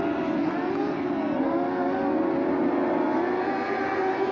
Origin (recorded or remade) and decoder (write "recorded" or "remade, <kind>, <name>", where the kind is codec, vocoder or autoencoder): recorded